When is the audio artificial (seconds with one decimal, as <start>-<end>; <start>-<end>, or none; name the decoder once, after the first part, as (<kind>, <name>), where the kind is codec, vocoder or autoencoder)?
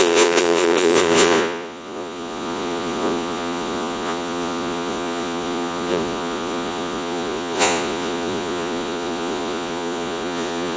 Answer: 0.0-10.8 (vocoder, Vocos)